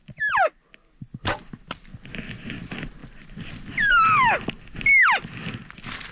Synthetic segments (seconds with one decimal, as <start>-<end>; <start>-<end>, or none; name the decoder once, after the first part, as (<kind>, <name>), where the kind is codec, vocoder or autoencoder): none